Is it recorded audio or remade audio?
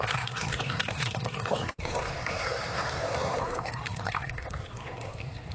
remade